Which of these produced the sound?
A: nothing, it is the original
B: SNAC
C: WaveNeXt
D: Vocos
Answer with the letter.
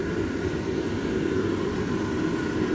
A